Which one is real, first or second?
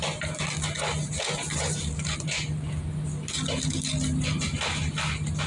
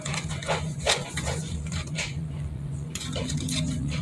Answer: first